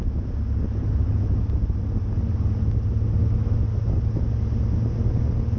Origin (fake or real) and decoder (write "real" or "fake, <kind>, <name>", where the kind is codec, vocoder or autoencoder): real